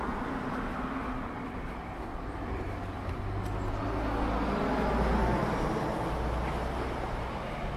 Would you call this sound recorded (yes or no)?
yes